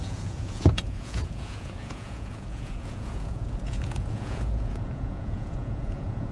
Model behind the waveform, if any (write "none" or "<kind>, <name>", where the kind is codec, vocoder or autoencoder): vocoder, Vocos